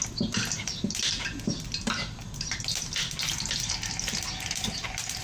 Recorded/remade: recorded